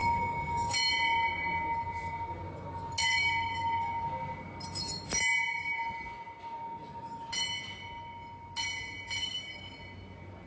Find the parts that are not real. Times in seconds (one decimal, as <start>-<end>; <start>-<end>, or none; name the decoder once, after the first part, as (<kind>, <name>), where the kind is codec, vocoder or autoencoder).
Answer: 0.0-0.7 (codec, DAC); 3.0-3.9; 9.2-9.8